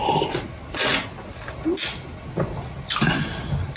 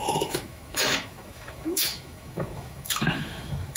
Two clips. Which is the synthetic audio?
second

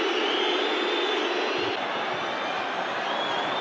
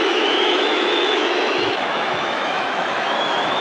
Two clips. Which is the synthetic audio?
second